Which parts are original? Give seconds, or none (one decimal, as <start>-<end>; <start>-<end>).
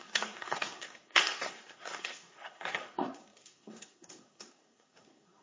none